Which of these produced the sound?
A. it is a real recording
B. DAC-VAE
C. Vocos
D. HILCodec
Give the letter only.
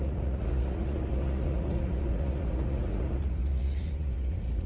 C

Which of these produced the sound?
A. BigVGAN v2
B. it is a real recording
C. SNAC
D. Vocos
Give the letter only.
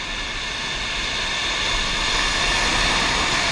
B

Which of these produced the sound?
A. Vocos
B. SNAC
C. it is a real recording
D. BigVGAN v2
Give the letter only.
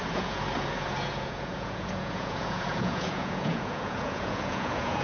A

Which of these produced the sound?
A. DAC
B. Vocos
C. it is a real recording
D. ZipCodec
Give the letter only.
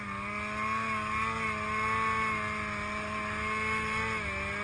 C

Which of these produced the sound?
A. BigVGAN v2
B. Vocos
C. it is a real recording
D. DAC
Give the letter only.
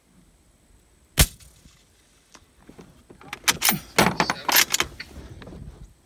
C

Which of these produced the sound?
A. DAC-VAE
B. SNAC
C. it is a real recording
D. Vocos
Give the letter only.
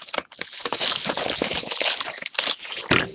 C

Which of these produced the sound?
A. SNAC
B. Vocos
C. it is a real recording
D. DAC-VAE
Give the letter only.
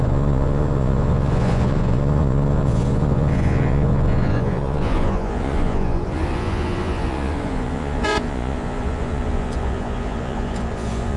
B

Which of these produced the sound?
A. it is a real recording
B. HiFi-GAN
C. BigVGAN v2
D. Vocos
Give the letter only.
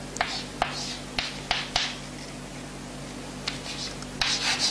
A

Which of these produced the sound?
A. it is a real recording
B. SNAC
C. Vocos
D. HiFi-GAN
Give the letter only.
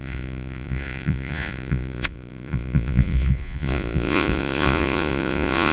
C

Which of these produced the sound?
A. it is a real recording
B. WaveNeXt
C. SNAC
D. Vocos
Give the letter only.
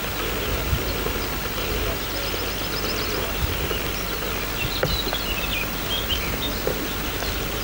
A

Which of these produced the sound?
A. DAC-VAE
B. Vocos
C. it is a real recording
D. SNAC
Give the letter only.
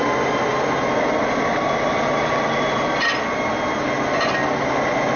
C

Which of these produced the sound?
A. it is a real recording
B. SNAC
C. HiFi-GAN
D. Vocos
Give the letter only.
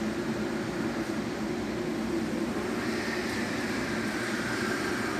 A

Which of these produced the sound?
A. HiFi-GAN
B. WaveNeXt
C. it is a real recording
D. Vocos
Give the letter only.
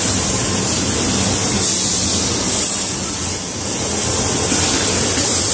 C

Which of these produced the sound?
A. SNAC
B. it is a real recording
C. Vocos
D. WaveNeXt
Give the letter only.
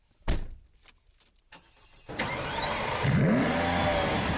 B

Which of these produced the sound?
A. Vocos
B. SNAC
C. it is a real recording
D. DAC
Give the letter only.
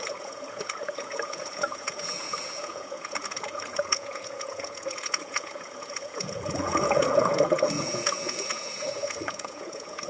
A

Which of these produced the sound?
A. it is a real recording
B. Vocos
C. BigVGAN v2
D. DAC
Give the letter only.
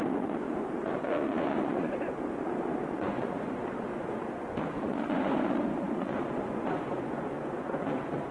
B